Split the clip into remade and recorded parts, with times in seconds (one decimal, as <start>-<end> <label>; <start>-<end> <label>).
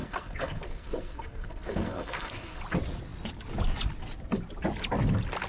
0.0-2.6 remade; 2.6-5.5 recorded